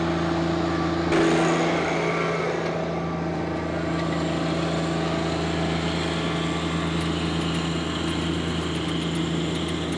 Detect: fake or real real